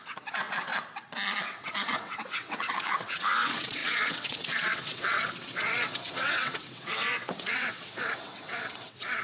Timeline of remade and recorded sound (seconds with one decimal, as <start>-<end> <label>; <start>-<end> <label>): 0.0-0.7 remade; 0.7-1.4 recorded; 1.4-9.2 remade